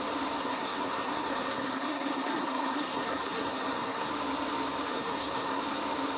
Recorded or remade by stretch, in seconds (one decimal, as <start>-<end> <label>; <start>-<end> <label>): 0.0-0.4 recorded; 0.4-4.1 remade; 4.1-4.9 recorded; 4.9-5.6 remade; 5.6-6.2 recorded